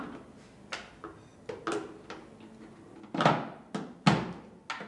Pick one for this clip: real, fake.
real